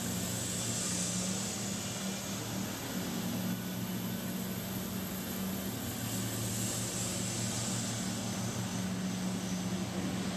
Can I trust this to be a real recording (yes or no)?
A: yes